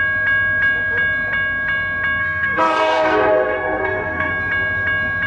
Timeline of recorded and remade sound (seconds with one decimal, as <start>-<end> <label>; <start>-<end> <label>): 0.0-2.2 recorded; 2.2-4.3 remade; 4.3-5.3 recorded